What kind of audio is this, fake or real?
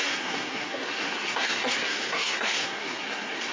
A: fake